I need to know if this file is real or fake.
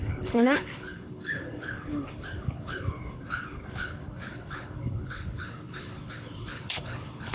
fake